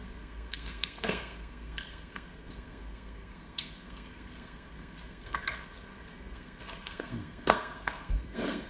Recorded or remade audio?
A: remade